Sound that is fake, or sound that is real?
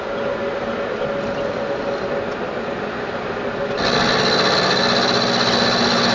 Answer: real